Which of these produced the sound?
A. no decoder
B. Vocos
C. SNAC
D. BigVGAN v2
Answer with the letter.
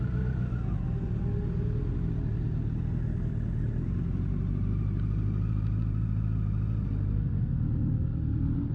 A